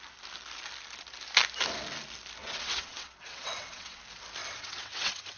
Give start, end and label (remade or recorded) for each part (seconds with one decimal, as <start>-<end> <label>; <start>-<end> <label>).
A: 0.0-2.4 recorded; 2.4-4.0 remade; 4.0-4.4 recorded; 4.4-5.4 remade